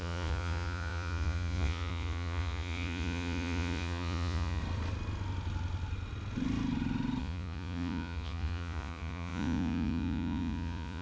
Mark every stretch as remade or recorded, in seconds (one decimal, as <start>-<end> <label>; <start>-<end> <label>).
0.0-4.6 remade; 4.6-7.2 recorded; 7.2-11.0 remade